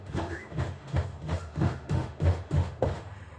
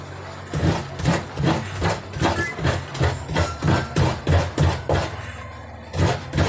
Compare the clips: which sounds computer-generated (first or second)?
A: first